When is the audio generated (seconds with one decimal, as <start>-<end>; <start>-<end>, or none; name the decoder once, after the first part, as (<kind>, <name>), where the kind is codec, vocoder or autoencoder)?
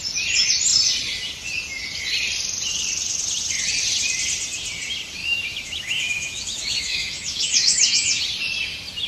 5.2-8.2 (autoencoder, DAC-VAE)